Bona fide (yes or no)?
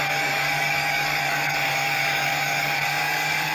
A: no